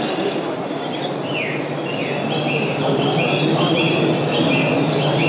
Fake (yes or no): no